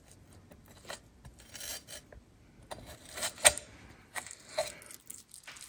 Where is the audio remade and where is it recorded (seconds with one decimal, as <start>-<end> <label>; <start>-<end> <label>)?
0.0-5.7 recorded